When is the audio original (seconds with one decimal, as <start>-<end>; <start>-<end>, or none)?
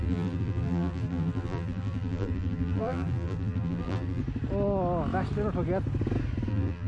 4.2-6.5